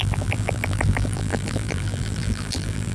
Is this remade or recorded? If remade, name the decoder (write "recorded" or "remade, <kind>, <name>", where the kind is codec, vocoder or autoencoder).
remade, vocoder, BigVGAN v2